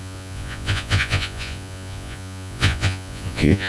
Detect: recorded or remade remade